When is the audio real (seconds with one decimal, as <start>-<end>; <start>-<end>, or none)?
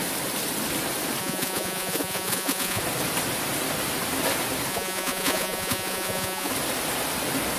0.0-1.2; 2.8-4.7; 6.5-7.6